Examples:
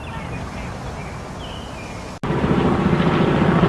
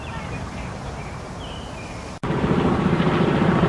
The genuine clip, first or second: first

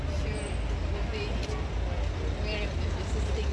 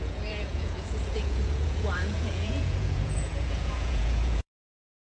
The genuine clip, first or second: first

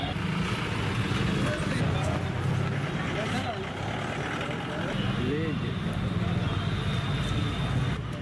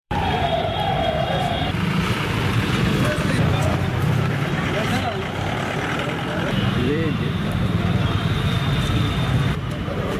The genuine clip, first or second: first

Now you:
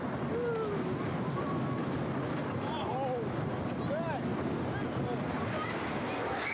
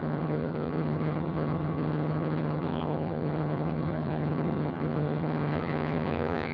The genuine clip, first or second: first